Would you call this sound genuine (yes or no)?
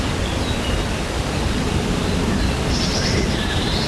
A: yes